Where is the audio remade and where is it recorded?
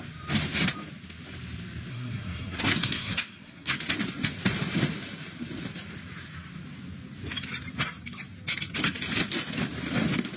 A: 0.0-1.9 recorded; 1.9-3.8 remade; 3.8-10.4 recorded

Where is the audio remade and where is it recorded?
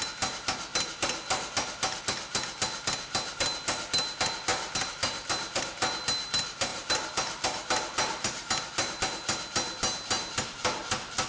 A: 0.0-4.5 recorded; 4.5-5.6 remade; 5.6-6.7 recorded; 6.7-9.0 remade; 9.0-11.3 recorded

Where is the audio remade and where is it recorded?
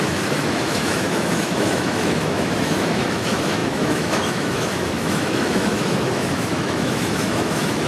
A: 0.0-7.9 remade